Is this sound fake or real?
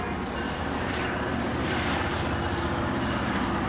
real